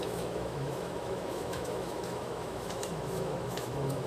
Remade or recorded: remade